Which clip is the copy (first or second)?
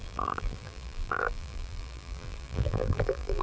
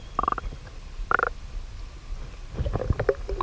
first